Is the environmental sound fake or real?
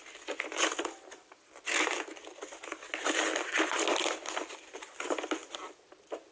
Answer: real